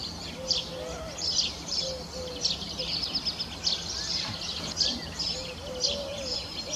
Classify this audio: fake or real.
real